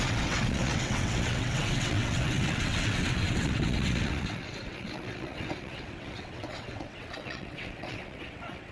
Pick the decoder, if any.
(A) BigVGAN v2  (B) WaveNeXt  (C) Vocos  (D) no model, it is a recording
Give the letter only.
B